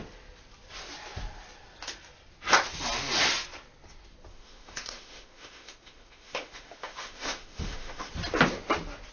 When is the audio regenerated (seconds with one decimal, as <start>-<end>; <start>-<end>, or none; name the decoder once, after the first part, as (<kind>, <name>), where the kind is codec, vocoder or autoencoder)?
4.3-8.1 (autoencoder, DAC-VAE)